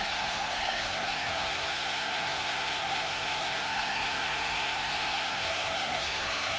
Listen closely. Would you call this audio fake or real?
fake